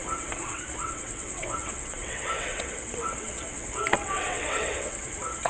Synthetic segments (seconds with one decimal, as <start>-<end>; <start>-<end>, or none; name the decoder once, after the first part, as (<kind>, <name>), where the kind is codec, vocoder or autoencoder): 0.0-5.5 (vocoder, WaveNeXt)